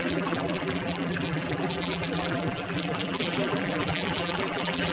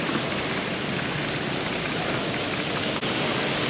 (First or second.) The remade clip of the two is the first